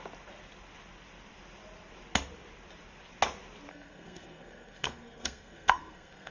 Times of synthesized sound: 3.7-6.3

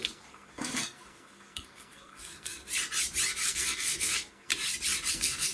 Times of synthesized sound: 0.0-2.6; 3.4-4.5; 5.1-5.5

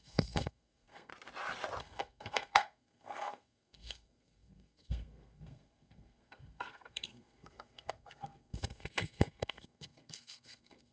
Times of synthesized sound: 0.0-1.1; 1.8-10.9

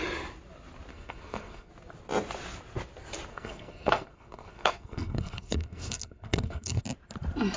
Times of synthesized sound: 0.9-1.7; 3.3-6.8

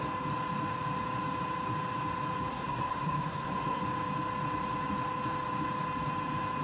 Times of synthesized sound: 2.5-3.8

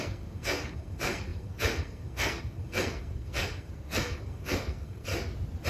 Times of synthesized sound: 0.0-5.1

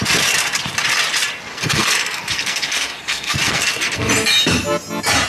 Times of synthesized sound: 1.5-4.1

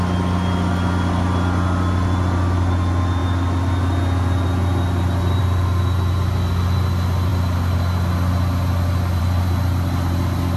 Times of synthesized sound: none